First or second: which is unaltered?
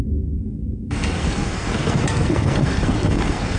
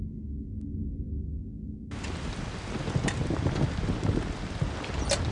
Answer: second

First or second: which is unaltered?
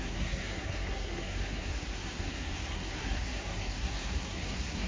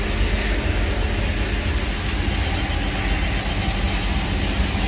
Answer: second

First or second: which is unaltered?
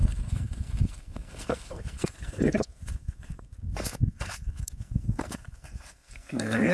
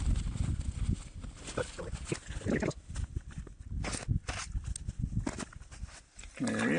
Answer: second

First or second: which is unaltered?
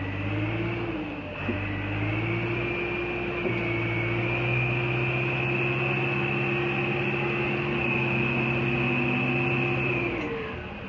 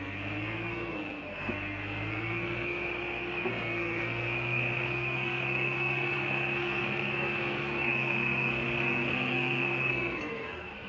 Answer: first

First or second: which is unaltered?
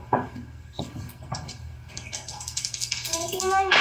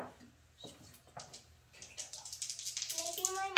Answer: second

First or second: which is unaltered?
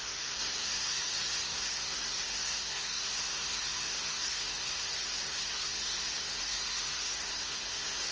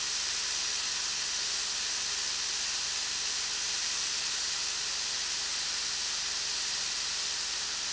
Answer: second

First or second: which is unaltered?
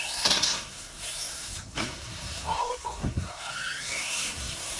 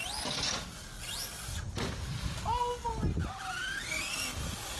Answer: second